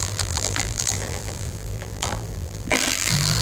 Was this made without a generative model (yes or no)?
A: no